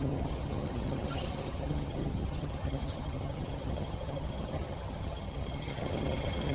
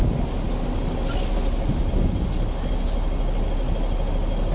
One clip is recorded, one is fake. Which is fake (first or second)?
first